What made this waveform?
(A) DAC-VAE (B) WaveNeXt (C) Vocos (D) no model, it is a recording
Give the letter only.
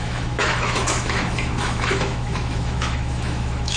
A